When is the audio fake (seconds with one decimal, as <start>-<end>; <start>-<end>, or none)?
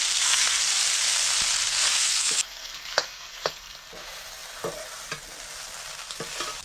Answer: 0.0-0.6; 1.7-3.9